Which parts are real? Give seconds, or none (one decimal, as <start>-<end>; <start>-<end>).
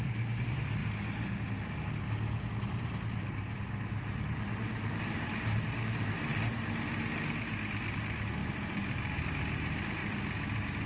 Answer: 0.8-2.6; 6.3-8.0; 10.0-10.9